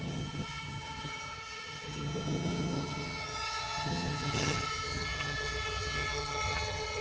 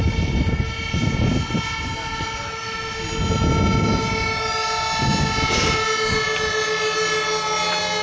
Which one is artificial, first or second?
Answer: first